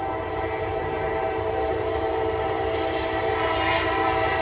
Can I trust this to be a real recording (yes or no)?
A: no